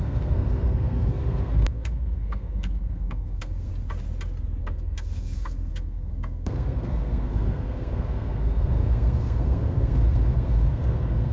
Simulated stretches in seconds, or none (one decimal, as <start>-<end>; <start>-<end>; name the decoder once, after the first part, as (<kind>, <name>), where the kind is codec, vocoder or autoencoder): 0.0-3.7 (codec, SNAC); 4.6-11.3

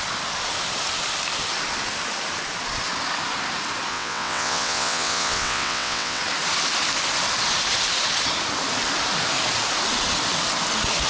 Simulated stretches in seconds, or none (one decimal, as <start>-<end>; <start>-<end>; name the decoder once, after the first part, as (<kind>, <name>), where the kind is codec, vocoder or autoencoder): 3.9-6.2 (vocoder, WaveNeXt)

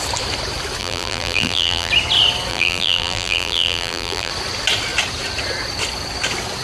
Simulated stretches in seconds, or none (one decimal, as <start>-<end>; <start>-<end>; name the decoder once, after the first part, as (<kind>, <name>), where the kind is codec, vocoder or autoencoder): 0.8-1.9 (vocoder, BigVGAN v2); 2.5-4.3

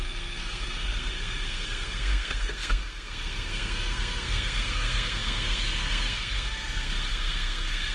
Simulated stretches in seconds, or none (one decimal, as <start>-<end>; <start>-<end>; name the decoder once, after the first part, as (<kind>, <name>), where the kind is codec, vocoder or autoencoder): 0.0-7.9 (codec, SNAC)

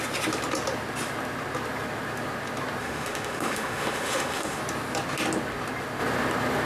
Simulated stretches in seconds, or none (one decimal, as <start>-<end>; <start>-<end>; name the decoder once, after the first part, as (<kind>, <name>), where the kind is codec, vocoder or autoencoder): 2.8-4.6 (autoencoder, DAC-VAE)

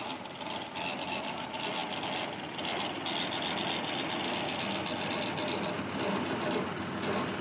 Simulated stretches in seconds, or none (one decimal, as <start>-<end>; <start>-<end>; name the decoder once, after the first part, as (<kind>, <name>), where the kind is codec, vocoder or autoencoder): none

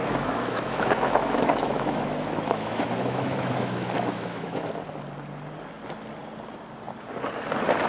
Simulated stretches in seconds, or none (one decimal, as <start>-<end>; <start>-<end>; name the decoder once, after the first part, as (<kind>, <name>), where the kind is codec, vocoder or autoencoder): 0.0-4.7 (autoencoder, DAC-VAE)

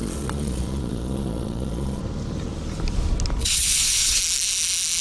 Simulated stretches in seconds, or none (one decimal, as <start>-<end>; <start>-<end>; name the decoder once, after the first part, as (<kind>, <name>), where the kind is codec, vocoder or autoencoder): 0.0-2.0 (vocoder, Vocos); 3.4-4.2